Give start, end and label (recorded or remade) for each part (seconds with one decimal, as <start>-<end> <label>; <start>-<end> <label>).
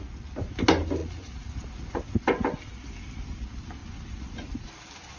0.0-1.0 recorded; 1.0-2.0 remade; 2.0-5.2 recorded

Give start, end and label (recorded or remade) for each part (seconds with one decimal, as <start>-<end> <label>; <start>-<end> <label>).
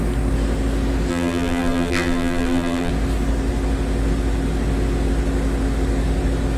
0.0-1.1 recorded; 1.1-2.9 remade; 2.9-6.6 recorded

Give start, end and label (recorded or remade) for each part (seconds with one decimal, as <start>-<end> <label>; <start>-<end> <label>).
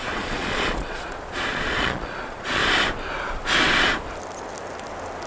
0.0-2.6 remade; 2.6-5.3 recorded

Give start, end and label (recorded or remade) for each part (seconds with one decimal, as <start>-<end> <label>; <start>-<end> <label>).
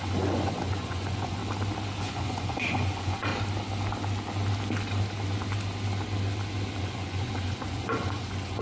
0.0-1.4 remade; 1.4-2.0 recorded; 2.0-3.3 remade; 3.3-6.8 recorded; 6.8-8.6 remade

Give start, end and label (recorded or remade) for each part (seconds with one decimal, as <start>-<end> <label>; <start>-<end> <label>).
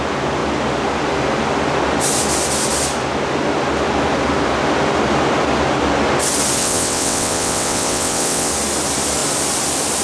0.0-6.6 recorded; 6.6-8.5 remade; 8.5-10.0 recorded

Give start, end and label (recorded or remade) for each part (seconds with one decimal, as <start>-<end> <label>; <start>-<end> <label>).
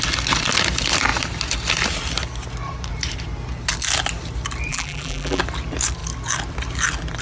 0.0-4.7 recorded; 4.7-5.4 remade; 5.4-7.2 recorded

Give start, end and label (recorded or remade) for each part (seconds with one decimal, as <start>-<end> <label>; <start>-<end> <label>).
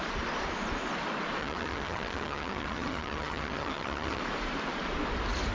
0.0-1.4 recorded; 1.4-4.2 remade; 4.2-5.5 recorded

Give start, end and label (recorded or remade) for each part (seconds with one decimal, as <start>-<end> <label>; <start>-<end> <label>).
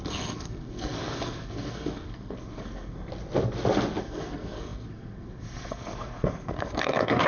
0.0-3.1 remade; 3.1-4.0 recorded; 4.0-7.3 remade